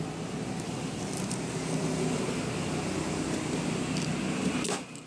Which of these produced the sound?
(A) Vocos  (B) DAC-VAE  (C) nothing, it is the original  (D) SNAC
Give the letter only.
C